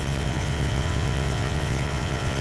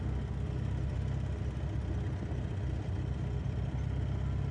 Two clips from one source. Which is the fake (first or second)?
first